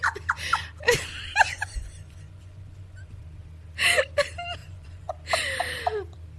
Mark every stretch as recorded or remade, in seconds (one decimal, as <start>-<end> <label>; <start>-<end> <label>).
0.0-1.5 recorded; 1.5-3.2 remade; 3.2-4.6 recorded; 4.6-5.1 remade; 5.1-6.4 recorded